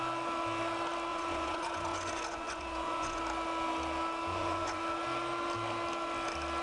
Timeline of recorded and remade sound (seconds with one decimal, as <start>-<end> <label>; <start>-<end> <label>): 0.0-1.1 recorded; 1.1-3.2 remade; 3.2-4.3 recorded; 4.3-4.8 remade; 4.8-6.6 recorded